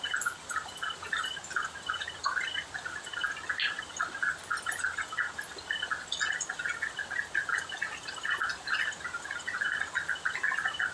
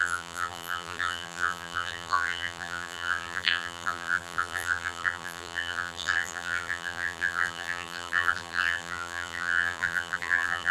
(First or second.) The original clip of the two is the first